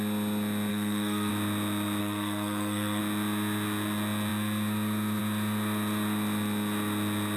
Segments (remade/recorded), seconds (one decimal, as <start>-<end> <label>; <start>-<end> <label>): 0.0-0.7 recorded; 0.7-1.3 remade; 1.3-2.0 recorded; 2.0-3.0 remade; 3.0-7.4 recorded